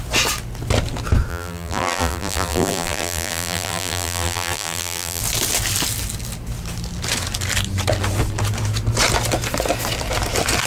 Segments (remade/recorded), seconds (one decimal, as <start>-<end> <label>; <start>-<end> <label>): 0.0-1.3 recorded; 1.3-5.2 remade; 5.2-10.7 recorded